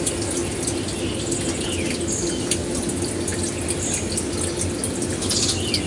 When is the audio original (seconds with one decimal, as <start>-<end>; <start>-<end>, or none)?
0.0-5.9